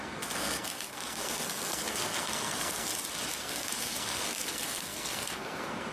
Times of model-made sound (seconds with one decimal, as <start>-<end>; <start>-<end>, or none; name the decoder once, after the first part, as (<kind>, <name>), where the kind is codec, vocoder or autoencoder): 0.0-2.9 (codec, SNAC); 3.4-5.9